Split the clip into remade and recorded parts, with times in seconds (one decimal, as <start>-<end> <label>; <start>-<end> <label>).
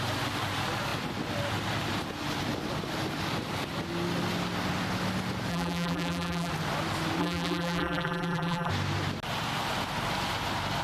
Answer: 0.0-5.5 recorded; 5.5-6.5 remade; 6.5-7.2 recorded; 7.2-8.7 remade; 8.7-10.8 recorded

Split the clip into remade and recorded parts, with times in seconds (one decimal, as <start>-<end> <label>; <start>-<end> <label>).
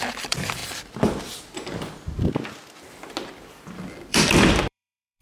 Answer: 0.0-0.6 remade; 0.6-3.5 recorded; 3.5-5.2 remade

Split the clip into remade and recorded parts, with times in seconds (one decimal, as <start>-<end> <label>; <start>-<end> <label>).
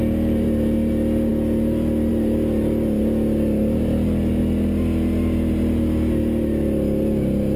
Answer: 0.0-1.3 recorded; 1.3-2.1 remade; 2.1-7.6 recorded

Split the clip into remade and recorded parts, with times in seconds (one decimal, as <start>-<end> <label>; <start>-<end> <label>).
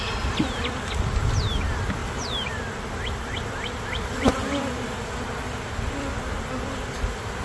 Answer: 0.0-2.0 recorded; 2.0-4.6 remade; 4.6-7.4 recorded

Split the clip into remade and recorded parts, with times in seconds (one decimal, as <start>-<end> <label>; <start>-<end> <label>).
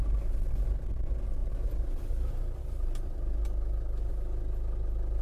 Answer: 0.0-5.2 recorded